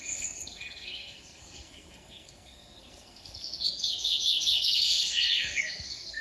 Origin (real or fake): fake